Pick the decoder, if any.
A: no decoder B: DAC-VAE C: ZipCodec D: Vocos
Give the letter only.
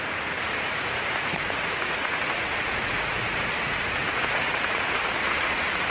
D